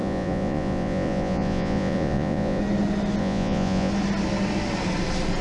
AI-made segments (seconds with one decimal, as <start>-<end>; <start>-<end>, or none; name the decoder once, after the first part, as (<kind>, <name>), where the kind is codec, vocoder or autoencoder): 0.0-2.6 (vocoder, Vocos); 3.2-3.9